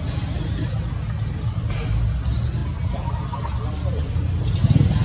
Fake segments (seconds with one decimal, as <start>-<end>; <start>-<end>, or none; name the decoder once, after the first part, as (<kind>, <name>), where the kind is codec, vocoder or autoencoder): none

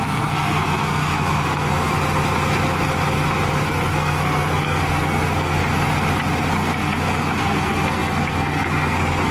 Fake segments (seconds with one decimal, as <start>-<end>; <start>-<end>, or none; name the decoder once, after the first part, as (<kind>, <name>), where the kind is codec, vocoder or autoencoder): 0.0-1.9 (codec, SNAC); 3.6-5.6; 6.5-9.3

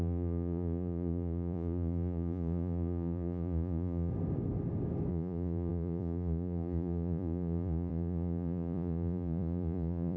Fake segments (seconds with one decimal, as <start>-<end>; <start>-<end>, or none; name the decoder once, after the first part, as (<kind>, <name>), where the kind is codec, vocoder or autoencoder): 0.0-4.1 (vocoder, Vocos); 5.1-10.2

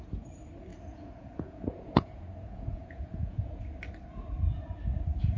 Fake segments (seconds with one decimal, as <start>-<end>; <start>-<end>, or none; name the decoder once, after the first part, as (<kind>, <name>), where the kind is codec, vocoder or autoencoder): 0.7-3.6 (vocoder, Vocos)